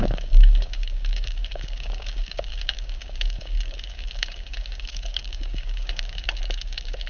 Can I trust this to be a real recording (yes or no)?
no